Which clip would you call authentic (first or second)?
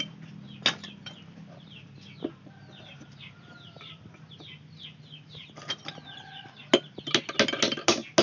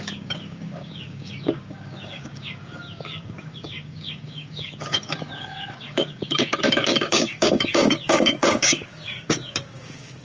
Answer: first